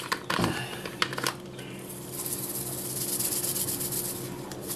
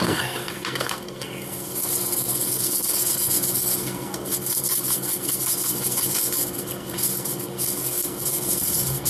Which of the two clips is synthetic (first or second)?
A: second